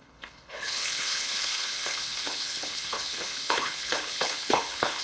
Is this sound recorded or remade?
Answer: remade